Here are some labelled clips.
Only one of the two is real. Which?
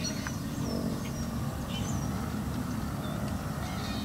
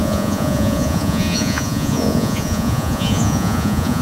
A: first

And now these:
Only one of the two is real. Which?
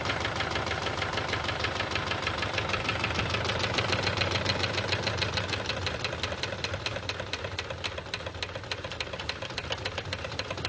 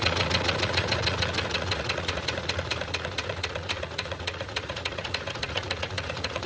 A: first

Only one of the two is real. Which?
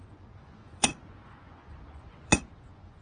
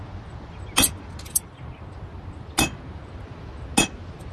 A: second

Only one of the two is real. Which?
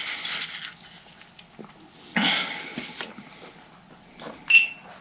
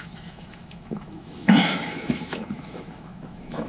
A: first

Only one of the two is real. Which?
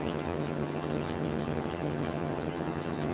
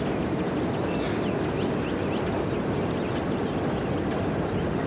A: second